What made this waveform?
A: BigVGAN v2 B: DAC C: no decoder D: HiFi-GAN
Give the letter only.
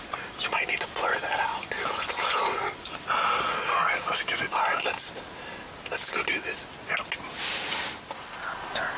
C